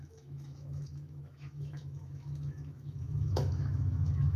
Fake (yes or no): yes